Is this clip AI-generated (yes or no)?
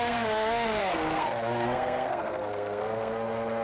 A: yes